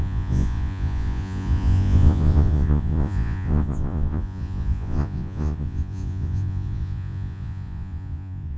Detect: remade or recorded remade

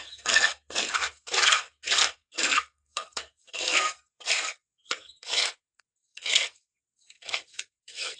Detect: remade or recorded remade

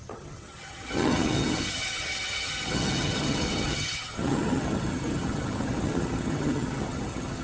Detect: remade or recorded remade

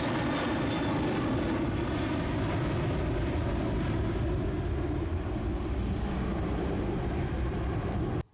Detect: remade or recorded recorded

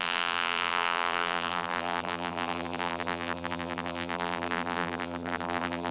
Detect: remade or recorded remade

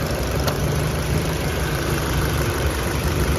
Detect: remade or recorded remade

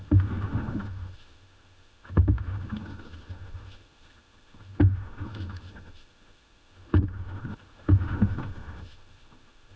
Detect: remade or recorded remade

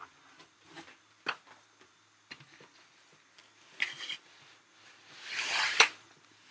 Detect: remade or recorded recorded